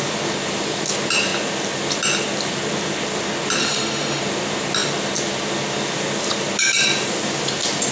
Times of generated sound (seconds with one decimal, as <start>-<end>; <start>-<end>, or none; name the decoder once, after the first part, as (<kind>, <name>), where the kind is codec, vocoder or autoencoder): 3.6-4.2 (autoencoder, DAC-VAE)